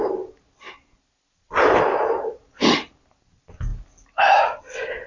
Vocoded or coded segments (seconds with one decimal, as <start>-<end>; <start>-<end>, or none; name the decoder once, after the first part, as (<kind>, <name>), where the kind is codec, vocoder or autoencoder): none